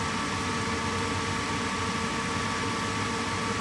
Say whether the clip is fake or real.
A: real